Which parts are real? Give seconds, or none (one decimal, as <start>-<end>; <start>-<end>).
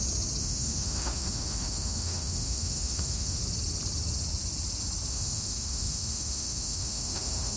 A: 0.0-0.4; 3.4-5.1